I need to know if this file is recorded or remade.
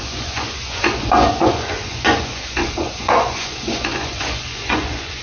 remade